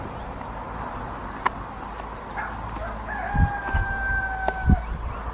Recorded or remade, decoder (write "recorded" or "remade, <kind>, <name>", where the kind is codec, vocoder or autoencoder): recorded